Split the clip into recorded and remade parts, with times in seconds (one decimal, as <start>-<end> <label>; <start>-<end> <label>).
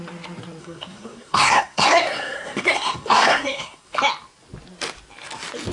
0.0-0.6 recorded; 0.6-4.0 remade; 4.0-5.7 recorded